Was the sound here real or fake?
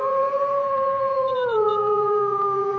fake